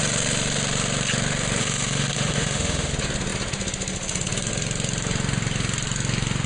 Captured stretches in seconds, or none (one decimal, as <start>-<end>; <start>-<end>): 0.0-1.6; 2.9-6.5